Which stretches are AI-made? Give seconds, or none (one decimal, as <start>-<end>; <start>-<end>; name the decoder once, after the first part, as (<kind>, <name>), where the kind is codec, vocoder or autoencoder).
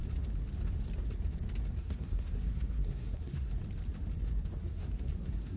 1.8-3.5 (codec, SNAC); 4.6-5.6